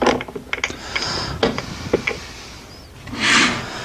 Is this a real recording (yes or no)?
yes